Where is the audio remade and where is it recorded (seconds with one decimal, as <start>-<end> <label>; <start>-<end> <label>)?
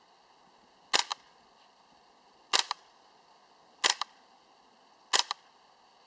0.0-1.1 recorded; 1.1-4.5 remade; 4.5-6.1 recorded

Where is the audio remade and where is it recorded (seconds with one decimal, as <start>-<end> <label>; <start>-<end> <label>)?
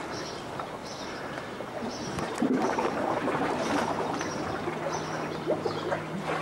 0.0-0.8 recorded; 0.8-4.6 remade; 4.6-6.4 recorded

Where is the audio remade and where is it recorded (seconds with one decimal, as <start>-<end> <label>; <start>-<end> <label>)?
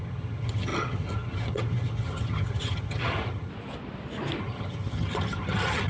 0.0-3.5 remade; 3.5-4.4 recorded; 4.4-5.9 remade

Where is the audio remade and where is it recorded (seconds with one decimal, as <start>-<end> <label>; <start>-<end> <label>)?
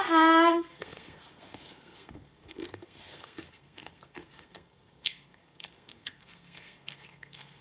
0.0-7.6 remade